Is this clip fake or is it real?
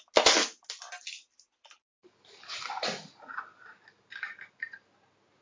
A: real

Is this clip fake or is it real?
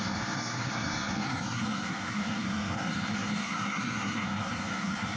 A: fake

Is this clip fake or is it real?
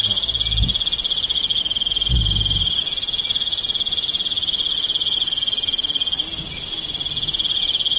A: real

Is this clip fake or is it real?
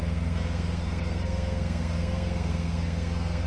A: fake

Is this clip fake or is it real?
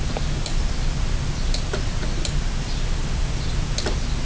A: real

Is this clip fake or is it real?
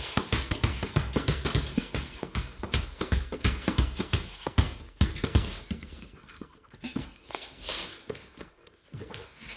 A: fake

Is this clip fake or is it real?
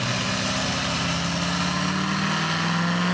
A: real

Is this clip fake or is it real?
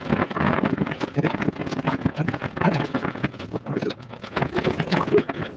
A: fake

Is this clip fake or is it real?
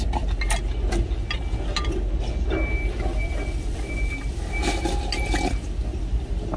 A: real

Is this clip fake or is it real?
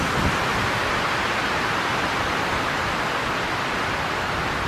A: real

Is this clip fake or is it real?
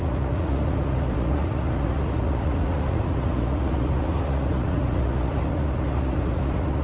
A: fake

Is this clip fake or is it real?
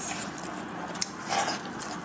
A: real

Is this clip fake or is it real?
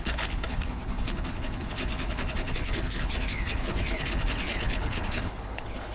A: fake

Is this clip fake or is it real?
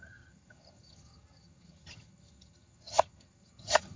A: fake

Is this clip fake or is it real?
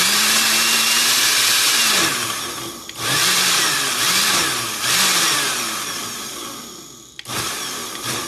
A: real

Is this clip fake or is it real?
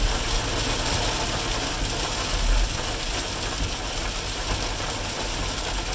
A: real